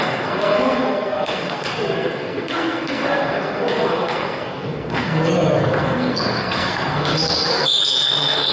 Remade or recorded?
remade